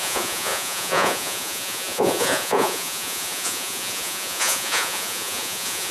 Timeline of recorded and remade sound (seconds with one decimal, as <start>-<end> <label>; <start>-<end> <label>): 0.0-5.9 remade